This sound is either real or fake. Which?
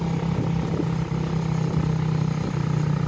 real